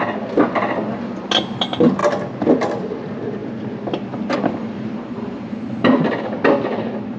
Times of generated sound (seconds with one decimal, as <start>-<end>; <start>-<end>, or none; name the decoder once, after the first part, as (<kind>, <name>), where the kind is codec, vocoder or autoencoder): none